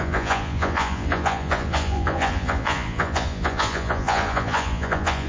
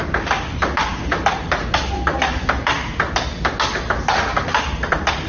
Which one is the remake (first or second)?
first